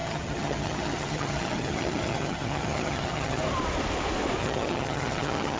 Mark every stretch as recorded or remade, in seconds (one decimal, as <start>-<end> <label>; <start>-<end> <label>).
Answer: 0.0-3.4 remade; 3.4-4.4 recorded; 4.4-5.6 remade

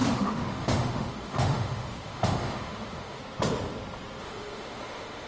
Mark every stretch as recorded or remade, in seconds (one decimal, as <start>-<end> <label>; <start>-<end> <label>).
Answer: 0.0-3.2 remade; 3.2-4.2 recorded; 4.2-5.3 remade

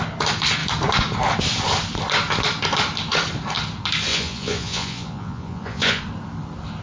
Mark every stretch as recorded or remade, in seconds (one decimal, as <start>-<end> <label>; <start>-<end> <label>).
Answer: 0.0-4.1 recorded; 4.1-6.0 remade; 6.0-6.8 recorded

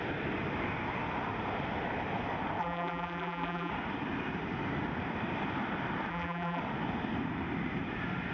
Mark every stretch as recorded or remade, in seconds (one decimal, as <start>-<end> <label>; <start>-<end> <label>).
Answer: 0.0-2.6 recorded; 2.6-3.7 remade; 3.7-6.1 recorded; 6.1-6.6 remade; 6.6-8.3 recorded

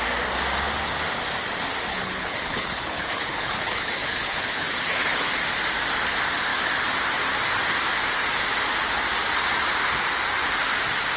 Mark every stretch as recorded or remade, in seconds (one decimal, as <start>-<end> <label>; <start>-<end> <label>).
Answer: 0.0-1.9 recorded; 1.9-5.3 remade; 5.3-11.2 recorded